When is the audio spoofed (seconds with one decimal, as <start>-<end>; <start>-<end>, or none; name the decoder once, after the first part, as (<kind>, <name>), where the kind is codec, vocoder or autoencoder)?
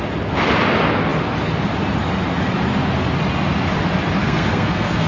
4.2-5.1 (codec, SNAC)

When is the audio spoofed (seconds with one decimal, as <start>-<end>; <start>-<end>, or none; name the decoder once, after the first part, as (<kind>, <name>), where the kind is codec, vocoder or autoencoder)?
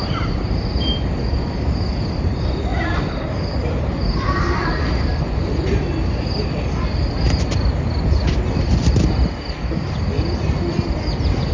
none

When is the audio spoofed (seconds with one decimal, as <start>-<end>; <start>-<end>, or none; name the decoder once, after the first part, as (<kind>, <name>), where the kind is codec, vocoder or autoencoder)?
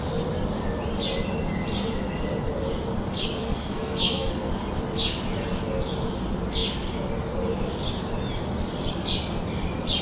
3.4-4.5 (codec, SNAC)